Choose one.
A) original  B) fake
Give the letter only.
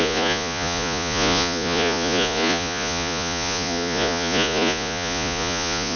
B